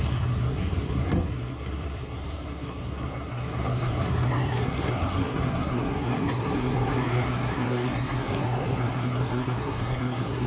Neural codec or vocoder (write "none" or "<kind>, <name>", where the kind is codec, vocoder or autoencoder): codec, SNAC